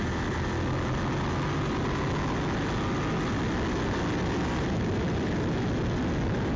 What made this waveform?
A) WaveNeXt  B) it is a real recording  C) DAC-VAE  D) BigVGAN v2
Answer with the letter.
B